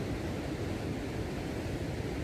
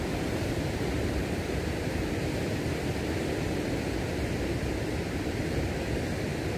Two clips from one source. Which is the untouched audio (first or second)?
first